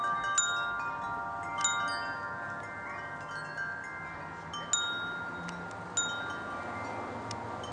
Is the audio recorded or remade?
recorded